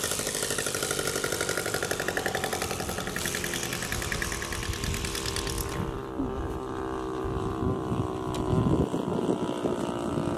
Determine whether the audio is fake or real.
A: real